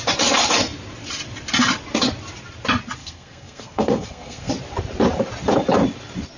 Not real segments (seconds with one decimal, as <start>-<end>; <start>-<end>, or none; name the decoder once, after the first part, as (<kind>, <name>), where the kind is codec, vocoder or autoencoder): 3.0-4.5 (codec, SNAC)